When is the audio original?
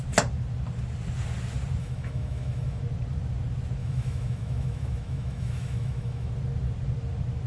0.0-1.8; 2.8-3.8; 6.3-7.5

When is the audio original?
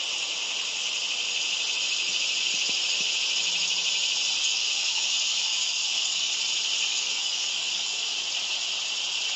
0.0-4.4; 6.3-6.9; 8.2-9.4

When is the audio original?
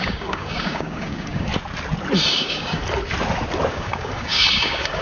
1.5-2.3; 2.8-3.7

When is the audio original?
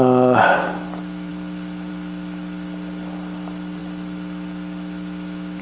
0.0-5.6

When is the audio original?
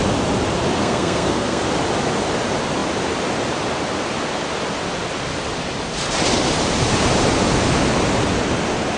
0.0-0.8; 1.6-9.0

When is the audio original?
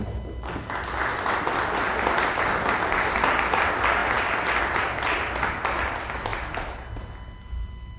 0.0-8.0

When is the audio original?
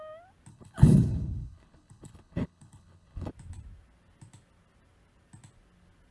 0.0-0.5; 3.3-6.1